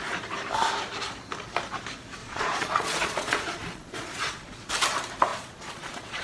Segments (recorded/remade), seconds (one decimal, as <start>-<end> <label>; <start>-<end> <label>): 0.0-2.2 recorded; 2.2-4.7 remade; 4.7-5.3 recorded; 5.3-6.2 remade